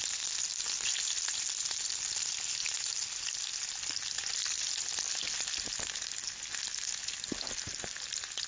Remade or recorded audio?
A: recorded